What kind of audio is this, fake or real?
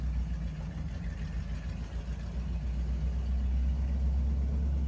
real